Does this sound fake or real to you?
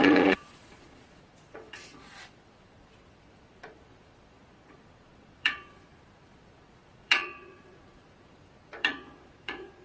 fake